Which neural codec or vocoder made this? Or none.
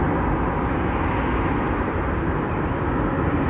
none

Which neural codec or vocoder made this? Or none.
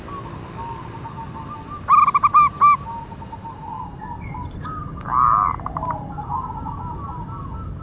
none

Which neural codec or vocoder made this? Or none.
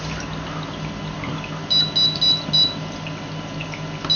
none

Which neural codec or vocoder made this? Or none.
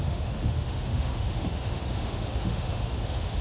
autoencoder, DAC-VAE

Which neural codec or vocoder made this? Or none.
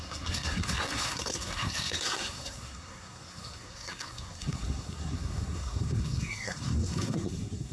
codec, SNAC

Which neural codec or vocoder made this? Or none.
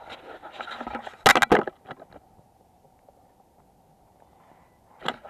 none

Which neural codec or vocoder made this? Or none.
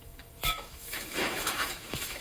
autoencoder, DAC-VAE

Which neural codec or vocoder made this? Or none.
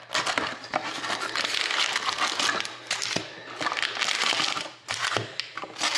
none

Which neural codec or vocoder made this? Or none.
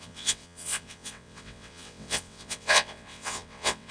vocoder, WaveNeXt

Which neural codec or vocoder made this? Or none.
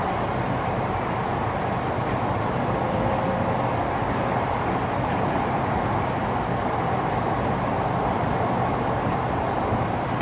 vocoder, BigVGAN v2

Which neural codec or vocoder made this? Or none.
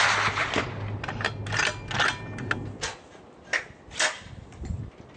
none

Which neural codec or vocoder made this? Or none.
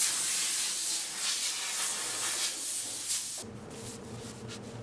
none